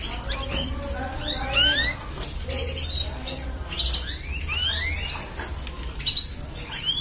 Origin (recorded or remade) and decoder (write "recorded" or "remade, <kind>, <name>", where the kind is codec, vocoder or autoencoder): recorded